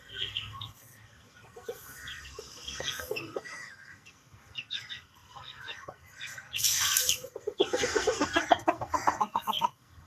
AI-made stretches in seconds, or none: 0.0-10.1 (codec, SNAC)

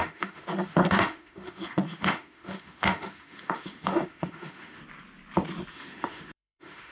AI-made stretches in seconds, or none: 0.0-4.8 (autoencoder, DAC-VAE); 5.7-6.9